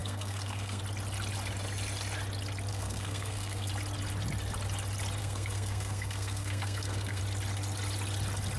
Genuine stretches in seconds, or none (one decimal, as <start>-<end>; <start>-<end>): 0.8-2.7; 3.7-5.2; 7.2-8.6